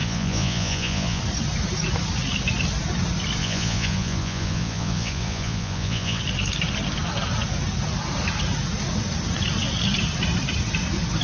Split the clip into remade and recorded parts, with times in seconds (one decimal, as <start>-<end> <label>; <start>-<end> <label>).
0.0-1.2 remade; 1.2-3.4 recorded; 3.4-6.2 remade; 6.2-11.2 recorded